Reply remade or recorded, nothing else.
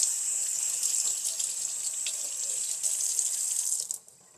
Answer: recorded